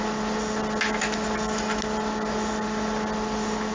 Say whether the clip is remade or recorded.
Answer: recorded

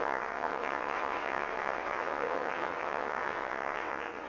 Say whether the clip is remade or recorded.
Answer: remade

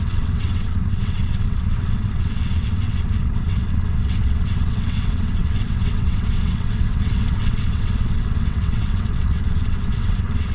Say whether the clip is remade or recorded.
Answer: remade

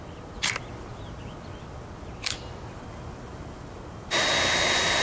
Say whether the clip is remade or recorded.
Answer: recorded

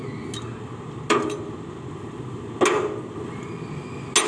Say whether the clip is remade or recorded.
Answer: recorded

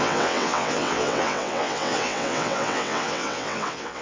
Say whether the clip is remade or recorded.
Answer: remade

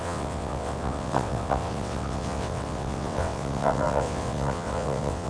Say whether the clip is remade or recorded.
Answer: remade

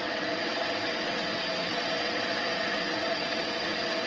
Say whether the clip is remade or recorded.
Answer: remade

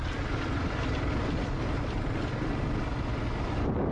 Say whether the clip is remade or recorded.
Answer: recorded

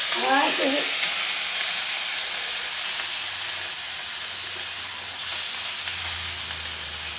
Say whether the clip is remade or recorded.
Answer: recorded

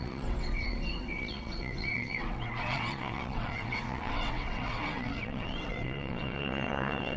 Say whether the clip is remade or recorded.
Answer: remade